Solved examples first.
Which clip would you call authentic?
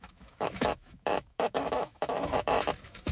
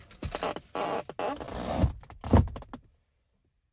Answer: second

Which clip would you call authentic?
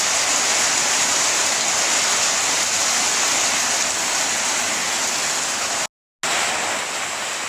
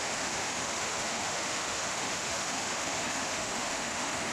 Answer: first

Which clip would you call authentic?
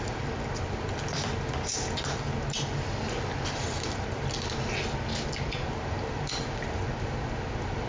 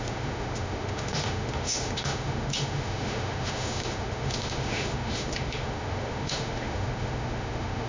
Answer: first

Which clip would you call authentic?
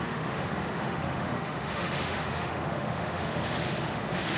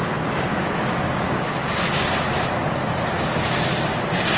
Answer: second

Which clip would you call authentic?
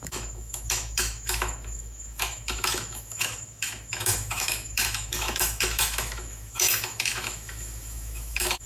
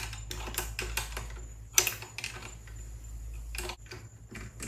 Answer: second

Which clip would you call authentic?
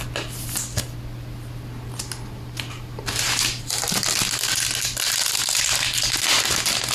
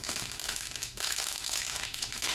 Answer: first